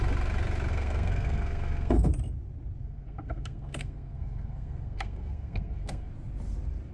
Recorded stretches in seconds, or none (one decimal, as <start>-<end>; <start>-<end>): 0.0-0.7; 2.1-2.8; 6.1-6.9